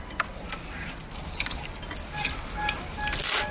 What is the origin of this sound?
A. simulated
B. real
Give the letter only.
B